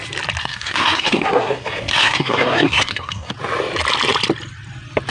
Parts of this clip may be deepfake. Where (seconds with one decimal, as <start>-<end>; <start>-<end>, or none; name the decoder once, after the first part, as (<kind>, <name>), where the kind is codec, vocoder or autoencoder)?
0.4-3.3 (codec, SNAC)